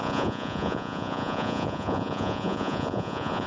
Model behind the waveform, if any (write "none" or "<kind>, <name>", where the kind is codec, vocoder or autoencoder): vocoder, Vocos